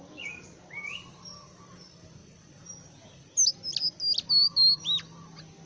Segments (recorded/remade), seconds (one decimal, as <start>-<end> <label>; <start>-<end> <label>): 0.0-5.7 recorded